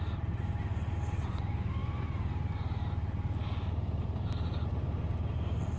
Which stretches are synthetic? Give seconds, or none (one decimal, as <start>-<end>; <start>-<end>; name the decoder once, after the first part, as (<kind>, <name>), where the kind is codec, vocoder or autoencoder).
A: 1.8-2.4 (vocoder, BigVGAN v2)